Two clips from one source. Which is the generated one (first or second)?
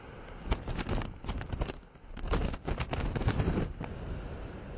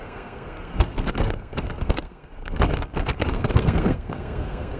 second